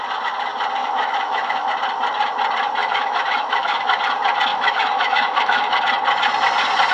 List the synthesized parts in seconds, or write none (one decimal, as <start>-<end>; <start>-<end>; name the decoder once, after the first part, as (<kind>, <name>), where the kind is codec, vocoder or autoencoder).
0.8-1.7 (autoencoder, DAC-VAE); 2.8-4.0; 4.5-5.8